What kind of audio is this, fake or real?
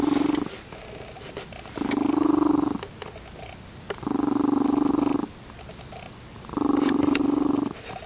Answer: real